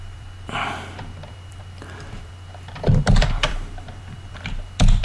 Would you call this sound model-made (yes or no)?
yes